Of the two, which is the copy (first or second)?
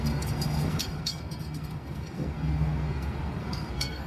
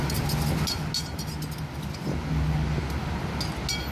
first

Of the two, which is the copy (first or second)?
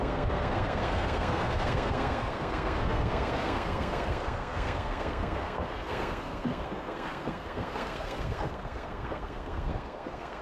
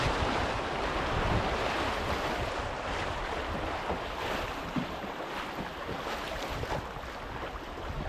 first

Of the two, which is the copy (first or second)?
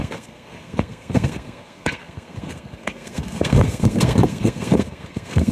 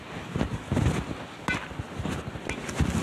first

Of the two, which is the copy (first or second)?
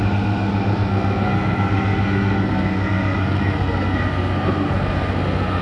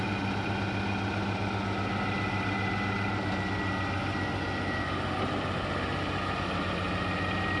first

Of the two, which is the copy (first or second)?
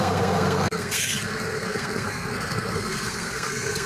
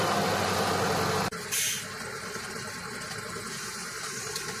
first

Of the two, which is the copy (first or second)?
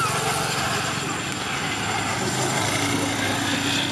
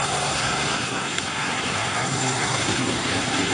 second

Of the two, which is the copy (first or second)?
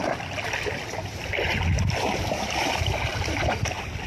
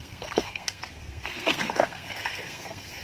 second